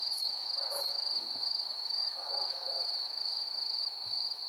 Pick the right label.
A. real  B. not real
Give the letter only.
B